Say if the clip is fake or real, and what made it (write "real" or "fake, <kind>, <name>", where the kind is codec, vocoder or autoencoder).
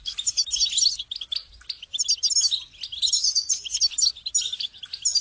real